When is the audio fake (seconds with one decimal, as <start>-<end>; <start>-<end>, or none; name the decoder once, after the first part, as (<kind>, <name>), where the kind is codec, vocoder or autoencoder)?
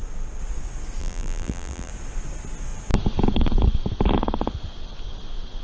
1.0-1.9 (vocoder, BigVGAN v2)